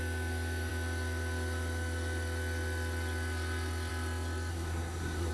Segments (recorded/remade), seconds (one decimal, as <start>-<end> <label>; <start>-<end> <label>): 0.0-4.5 recorded; 4.5-5.3 remade